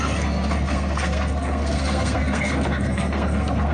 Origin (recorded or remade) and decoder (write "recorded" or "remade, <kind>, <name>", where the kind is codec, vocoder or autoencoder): remade, codec, SNAC